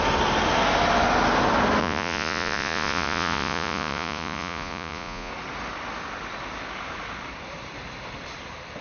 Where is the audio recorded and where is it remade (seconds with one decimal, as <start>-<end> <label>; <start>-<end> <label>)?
0.0-1.8 recorded; 1.8-5.3 remade; 5.3-8.8 recorded

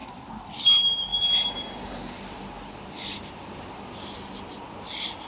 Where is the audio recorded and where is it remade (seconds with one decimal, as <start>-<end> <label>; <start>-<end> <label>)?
0.0-5.3 recorded